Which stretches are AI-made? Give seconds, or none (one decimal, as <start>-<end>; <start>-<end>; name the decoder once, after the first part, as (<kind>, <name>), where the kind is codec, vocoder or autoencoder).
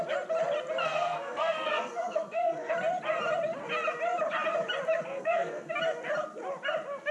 0.8-2.7 (codec, SNAC); 5.1-5.7